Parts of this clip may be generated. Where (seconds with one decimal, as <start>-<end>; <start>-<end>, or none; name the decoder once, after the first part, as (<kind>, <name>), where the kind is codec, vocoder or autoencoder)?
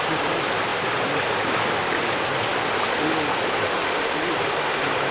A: none